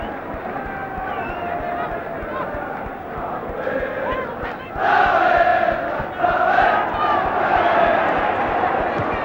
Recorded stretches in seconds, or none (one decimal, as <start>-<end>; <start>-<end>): 0.0-9.2

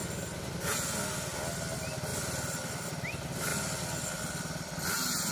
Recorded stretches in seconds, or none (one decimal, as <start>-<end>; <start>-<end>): 0.5-5.3

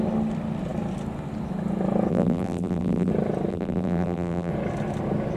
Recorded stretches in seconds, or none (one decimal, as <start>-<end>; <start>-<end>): 0.0-2.1; 3.1-3.5; 4.5-5.4

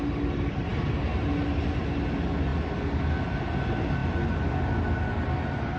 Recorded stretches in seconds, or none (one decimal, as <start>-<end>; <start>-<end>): 0.0-5.8

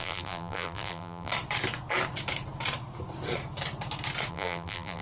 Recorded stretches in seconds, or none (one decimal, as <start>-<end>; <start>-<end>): 1.3-4.3

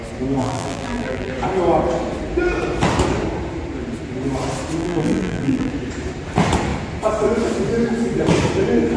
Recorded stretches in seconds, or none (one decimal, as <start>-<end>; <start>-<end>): 0.0-0.4; 1.3-4.8; 5.7-9.0